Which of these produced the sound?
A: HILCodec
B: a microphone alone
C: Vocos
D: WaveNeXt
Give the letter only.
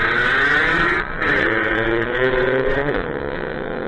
D